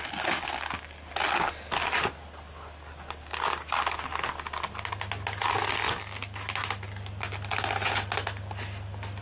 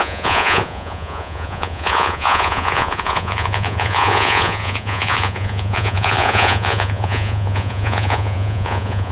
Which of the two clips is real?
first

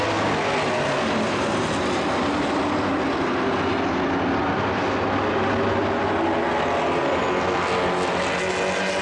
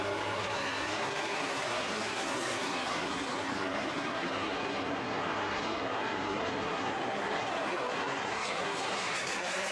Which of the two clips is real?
first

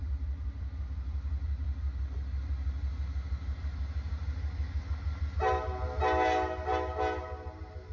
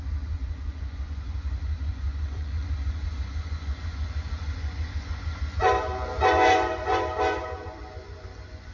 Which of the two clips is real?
first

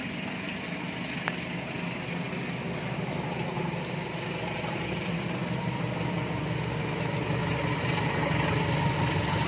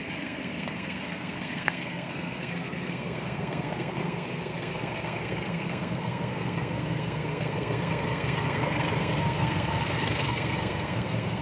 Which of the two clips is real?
first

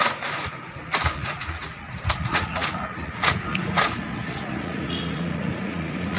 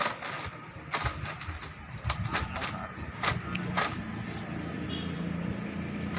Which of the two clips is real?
second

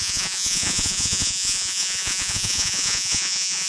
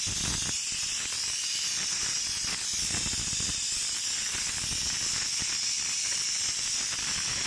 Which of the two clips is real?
second